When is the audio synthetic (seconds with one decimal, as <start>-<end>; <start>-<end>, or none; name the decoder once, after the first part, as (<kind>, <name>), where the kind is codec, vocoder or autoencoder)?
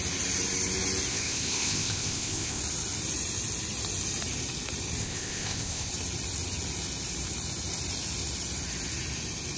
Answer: 1.1-2.6 (codec, ZipCodec); 5.0-5.9